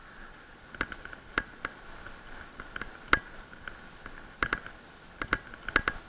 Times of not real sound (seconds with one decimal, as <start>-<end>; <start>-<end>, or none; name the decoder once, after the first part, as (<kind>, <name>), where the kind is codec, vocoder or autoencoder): none